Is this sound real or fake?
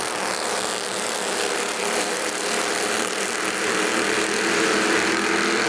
real